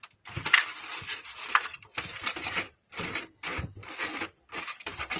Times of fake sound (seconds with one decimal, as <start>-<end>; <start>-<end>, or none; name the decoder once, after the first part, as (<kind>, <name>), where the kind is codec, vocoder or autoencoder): none